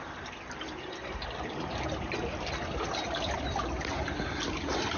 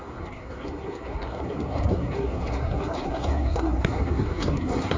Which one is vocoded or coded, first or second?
second